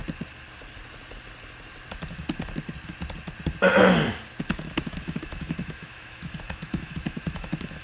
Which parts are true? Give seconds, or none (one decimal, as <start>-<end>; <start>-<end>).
0.0-4.4